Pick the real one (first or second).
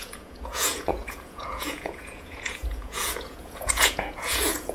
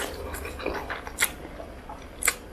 second